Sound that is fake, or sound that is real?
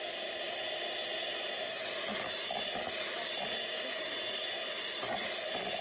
real